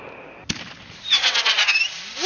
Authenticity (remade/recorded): recorded